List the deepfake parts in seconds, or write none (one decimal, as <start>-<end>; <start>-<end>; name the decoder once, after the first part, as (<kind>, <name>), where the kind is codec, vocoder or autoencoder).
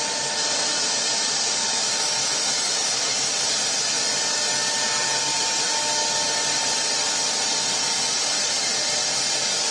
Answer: 1.6-3.3 (autoencoder, DAC-VAE)